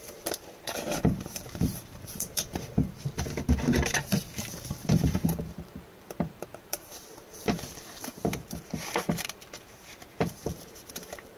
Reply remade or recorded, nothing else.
remade